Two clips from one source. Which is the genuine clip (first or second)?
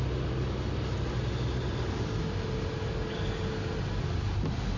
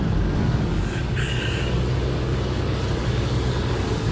first